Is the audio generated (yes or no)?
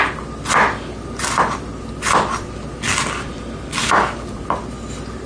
no